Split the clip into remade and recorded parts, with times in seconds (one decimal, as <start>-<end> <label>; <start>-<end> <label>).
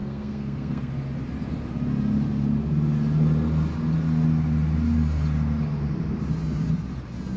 0.0-0.9 remade; 0.9-7.4 recorded